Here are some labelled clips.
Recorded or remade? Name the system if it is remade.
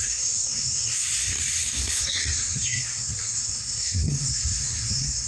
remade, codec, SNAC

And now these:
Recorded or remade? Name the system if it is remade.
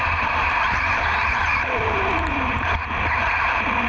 remade, vocoder, BigVGAN v2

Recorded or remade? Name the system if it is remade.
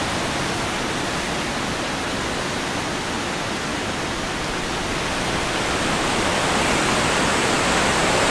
recorded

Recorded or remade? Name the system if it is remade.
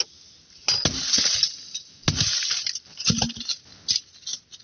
recorded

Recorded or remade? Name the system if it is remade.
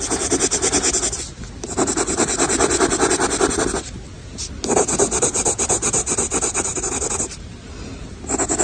recorded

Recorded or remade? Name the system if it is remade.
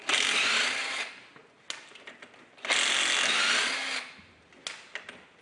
recorded